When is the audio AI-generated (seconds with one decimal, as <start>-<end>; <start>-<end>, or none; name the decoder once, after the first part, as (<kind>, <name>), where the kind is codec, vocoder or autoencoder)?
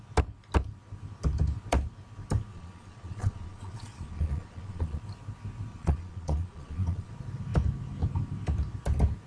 2.5-5.0 (vocoder, Vocos); 5.7-7.1